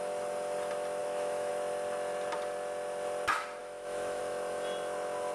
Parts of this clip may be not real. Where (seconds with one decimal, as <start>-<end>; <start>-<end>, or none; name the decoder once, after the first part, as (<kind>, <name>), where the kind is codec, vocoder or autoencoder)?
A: 1.0-1.5 (autoencoder, DAC-VAE); 3.6-4.2